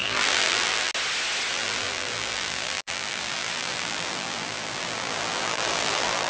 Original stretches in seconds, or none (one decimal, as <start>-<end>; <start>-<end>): 0.9-1.5